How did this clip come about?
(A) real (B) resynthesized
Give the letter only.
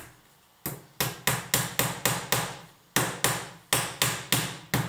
A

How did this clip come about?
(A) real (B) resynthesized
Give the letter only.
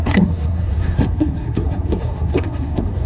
B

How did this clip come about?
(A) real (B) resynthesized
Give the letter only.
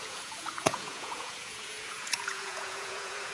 B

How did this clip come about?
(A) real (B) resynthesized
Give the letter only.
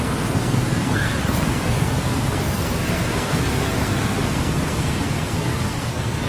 B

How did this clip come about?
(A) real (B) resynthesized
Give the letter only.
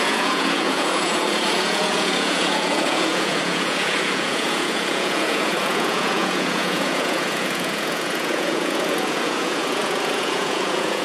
B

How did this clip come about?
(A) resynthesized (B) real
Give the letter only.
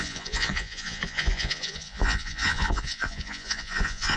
A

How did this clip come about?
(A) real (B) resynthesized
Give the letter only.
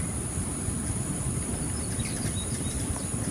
B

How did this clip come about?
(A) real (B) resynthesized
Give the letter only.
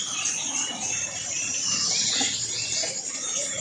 A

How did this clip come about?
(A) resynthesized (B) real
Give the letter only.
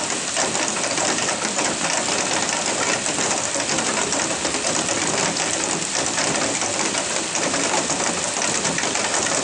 A